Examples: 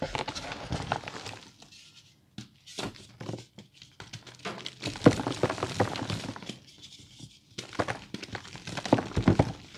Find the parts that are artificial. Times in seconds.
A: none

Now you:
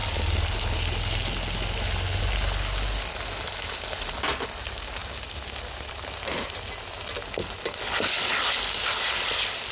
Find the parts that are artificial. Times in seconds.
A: none

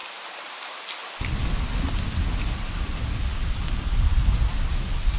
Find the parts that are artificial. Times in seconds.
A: none

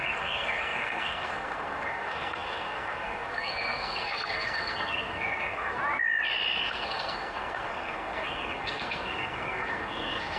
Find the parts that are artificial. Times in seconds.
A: 0.0-5.8 (codec, SNAC); 6.6-10.4